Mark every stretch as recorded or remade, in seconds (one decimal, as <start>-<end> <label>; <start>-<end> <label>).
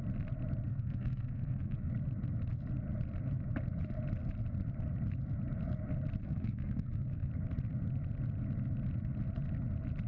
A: 0.0-0.7 recorded; 0.7-1.9 remade; 1.9-6.2 recorded; 6.2-7.3 remade; 7.3-10.1 recorded